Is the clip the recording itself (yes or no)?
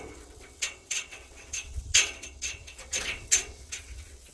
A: no